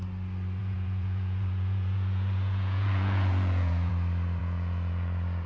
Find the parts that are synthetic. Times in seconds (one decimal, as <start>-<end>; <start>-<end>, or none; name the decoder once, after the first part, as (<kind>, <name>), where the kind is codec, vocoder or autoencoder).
0.6-3.9 (vocoder, Vocos); 4.4-5.5